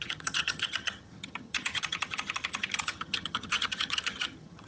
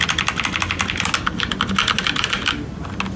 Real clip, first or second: second